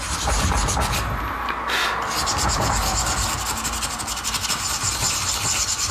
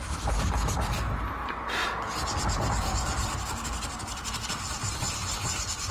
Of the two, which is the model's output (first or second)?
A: second